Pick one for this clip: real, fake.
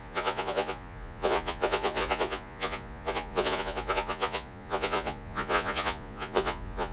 fake